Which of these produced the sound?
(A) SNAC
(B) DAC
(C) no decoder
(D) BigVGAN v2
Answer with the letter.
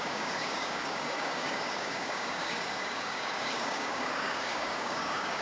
B